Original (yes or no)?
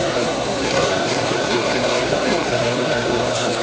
no